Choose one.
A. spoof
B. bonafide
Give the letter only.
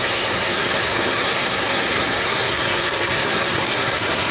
A